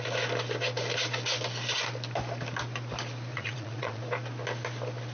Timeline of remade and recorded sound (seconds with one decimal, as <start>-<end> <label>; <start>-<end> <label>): 0.0-3.3 recorded; 3.3-4.0 remade; 4.0-5.1 recorded